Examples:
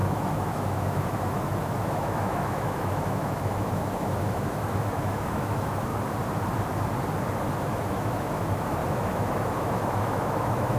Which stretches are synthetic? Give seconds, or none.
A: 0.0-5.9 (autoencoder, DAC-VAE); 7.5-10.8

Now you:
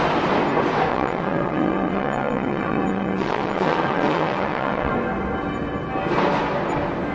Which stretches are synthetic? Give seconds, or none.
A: 0.9-4.9 (vocoder, WaveNeXt)

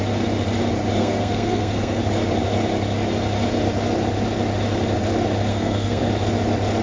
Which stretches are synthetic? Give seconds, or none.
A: 1.0-2.0 (codec, SNAC); 5.5-6.1